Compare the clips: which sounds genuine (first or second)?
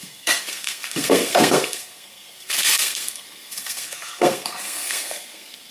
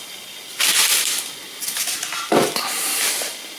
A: second